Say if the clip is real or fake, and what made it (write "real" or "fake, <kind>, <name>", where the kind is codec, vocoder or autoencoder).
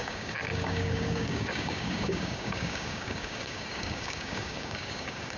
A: fake, codec, DAC